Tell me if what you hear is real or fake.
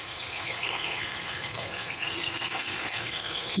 fake